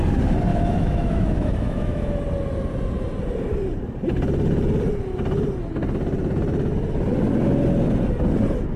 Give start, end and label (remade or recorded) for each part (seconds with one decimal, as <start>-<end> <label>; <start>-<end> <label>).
0.0-0.5 recorded; 0.5-2.2 remade; 2.2-8.8 recorded